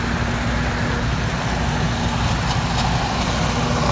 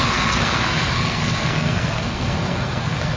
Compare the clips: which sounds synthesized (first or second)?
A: second